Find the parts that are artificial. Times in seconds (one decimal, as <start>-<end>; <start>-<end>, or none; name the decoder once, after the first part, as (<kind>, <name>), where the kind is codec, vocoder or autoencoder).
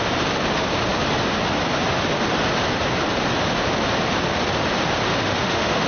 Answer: 5.1-5.9 (autoencoder, DAC-VAE)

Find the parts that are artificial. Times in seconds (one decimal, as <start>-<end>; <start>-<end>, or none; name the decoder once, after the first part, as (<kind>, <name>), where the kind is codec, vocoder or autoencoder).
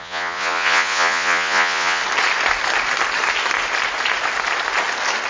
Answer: 0.0-2.0 (vocoder, Vocos)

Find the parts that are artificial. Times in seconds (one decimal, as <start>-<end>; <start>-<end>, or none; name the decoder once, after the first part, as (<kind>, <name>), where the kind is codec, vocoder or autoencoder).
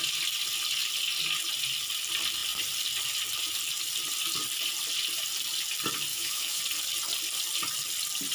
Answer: 6.1-6.6 (autoencoder, DAC-VAE)